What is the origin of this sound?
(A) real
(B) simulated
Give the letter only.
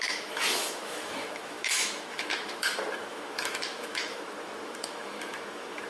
B